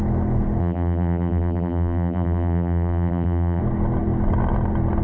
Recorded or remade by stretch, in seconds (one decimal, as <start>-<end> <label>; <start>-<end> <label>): 0.0-0.6 recorded; 0.6-3.6 remade; 3.6-5.0 recorded

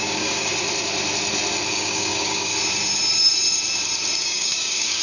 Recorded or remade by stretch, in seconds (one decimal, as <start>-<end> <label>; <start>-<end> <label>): 0.0-0.5 remade; 0.5-1.7 recorded; 1.7-2.5 remade; 2.5-4.2 recorded; 4.2-5.0 remade

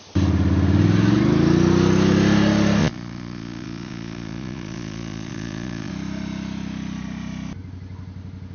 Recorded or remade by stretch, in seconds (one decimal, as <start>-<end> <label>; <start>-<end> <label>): 0.0-2.8 recorded; 2.8-5.9 remade; 5.9-8.5 recorded